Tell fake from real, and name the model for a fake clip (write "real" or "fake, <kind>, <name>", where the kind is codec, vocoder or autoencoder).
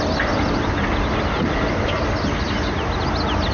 real